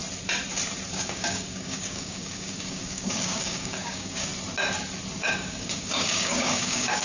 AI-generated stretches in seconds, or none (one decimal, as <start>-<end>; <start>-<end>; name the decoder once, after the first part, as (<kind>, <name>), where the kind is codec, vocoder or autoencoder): 0.9-4.3 (codec, DAC); 5.2-7.0